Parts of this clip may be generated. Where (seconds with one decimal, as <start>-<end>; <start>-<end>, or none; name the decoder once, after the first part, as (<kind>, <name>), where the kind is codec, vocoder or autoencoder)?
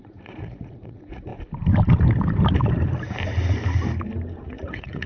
0.0-1.3 (vocoder, Vocos); 4.4-5.1